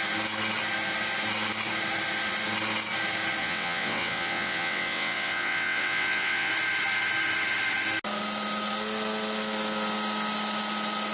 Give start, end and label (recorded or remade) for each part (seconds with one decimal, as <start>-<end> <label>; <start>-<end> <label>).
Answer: 0.0-3.4 recorded; 3.4-6.5 remade; 6.5-11.1 recorded